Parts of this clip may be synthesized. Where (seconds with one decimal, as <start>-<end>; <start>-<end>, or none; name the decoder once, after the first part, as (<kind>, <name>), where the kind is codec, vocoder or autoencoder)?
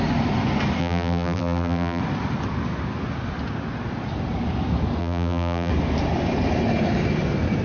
0.8-2.0 (vocoder, BigVGAN v2); 5.0-5.7